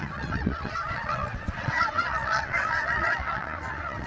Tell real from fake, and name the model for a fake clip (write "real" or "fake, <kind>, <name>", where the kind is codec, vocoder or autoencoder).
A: fake, vocoder, WaveNeXt